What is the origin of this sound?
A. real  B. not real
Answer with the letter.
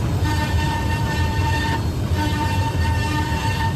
B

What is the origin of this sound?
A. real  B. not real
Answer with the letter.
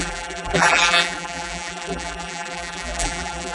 B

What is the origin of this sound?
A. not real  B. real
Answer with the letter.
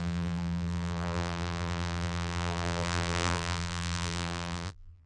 A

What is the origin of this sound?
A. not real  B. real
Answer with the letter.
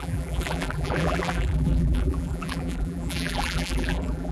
A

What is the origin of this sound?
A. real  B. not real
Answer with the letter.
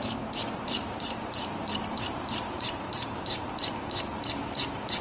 B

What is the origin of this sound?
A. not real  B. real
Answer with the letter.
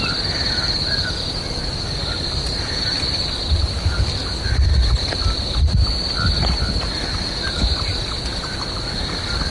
B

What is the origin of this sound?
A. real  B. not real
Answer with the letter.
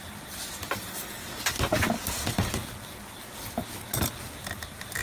A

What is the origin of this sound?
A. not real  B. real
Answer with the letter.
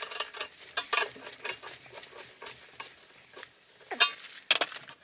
B